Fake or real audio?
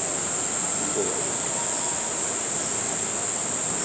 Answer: real